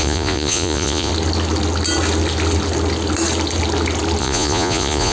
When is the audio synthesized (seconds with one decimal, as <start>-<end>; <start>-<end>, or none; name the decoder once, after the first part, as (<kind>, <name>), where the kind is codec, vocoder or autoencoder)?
0.0-1.1 (vocoder, Vocos); 4.2-5.1